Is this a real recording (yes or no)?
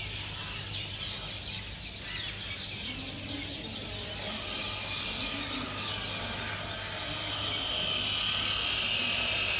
yes